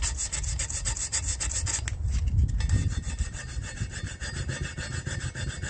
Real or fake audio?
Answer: real